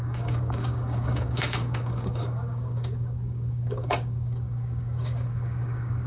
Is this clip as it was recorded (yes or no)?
no